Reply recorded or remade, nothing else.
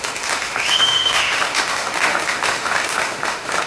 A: remade